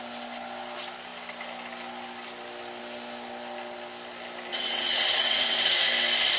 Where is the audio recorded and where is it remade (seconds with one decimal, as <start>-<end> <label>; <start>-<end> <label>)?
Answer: 0.0-4.5 recorded; 4.5-5.8 remade; 5.8-6.4 recorded